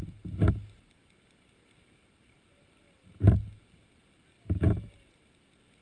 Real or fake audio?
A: real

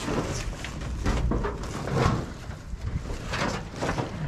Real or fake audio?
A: real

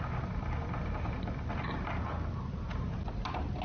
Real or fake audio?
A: real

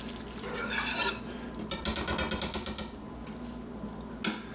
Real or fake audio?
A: real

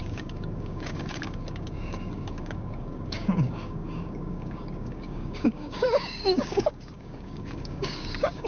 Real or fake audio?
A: fake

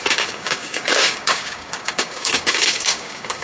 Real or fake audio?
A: fake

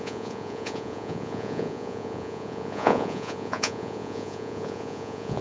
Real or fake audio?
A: fake